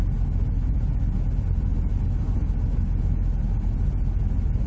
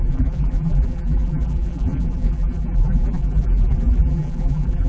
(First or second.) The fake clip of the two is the second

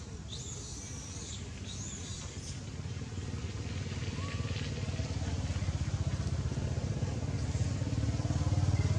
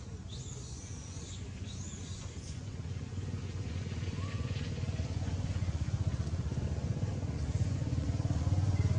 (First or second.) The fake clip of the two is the second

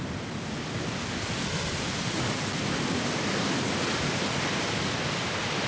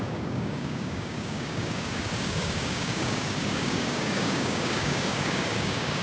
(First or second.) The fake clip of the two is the second